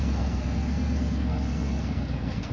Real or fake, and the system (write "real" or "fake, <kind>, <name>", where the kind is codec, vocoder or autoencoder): fake, codec, SNAC